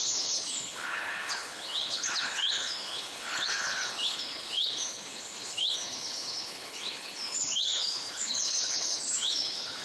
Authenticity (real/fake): fake